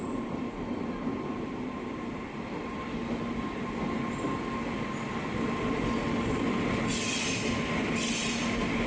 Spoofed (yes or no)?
no